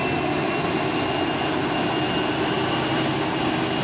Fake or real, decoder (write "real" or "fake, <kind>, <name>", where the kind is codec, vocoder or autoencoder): real